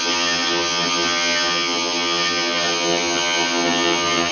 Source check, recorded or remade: remade